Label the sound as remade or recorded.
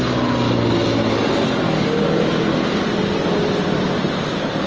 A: recorded